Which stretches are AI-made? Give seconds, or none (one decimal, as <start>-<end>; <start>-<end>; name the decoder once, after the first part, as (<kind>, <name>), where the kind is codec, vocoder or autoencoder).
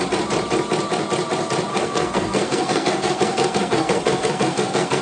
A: 1.7-5.0 (codec, SNAC)